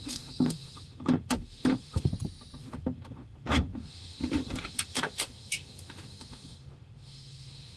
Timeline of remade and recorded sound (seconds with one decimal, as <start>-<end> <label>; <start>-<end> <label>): 0.0-2.1 remade; 2.1-2.6 recorded; 2.6-7.8 remade